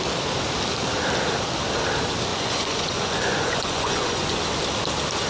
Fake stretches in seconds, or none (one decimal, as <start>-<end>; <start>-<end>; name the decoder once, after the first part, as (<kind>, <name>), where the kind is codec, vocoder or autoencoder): 2.3-4.4 (vocoder, Vocos)